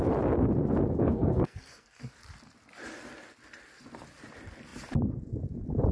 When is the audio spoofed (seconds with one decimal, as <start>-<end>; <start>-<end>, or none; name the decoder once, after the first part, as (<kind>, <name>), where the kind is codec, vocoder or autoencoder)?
1.0-2.2 (codec, SNAC)